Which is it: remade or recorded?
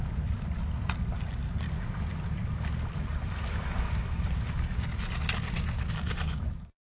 recorded